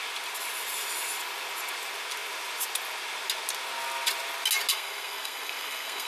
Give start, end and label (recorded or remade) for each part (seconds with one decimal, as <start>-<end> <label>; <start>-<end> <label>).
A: 0.0-4.7 recorded; 4.7-6.1 remade